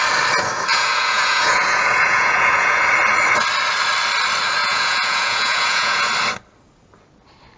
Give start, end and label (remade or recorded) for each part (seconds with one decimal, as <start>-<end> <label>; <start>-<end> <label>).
0.0-0.7 recorded; 0.7-2.8 remade; 2.8-4.6 recorded; 4.6-6.1 remade; 6.1-7.6 recorded